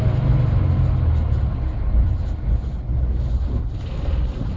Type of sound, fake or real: real